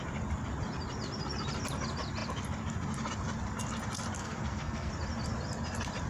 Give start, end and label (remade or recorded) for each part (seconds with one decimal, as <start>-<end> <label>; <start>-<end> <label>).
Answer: 0.0-4.2 recorded; 4.2-4.9 remade; 4.9-6.1 recorded